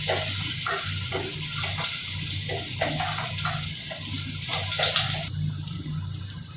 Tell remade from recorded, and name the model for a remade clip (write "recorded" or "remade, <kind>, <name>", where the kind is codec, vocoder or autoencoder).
recorded